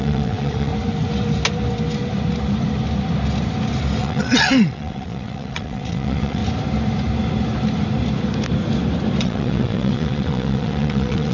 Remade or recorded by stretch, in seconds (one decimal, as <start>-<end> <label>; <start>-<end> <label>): 0.0-0.7 remade; 0.7-4.0 recorded; 4.0-6.4 remade; 6.4-9.2 recorded; 9.2-11.3 remade